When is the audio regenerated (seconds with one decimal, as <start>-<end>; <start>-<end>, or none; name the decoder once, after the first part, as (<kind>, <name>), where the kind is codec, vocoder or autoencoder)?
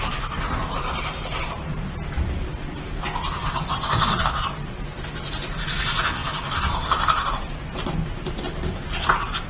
3.4-4.2 (vocoder, WaveNeXt)